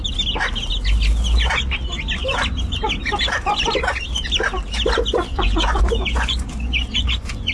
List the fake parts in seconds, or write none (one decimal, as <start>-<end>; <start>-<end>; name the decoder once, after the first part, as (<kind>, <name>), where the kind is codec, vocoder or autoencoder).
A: 5.3-7.5 (vocoder, Vocos)